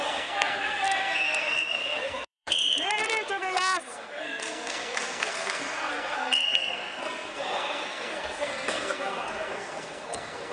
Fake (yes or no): yes